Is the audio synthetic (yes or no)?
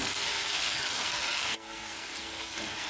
yes